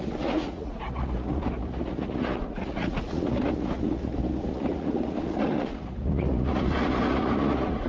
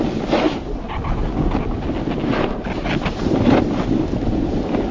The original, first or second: second